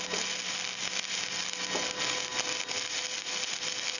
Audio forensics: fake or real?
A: real